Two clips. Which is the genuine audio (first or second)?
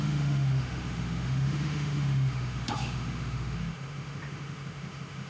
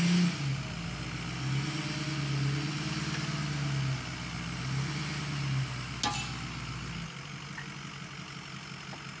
second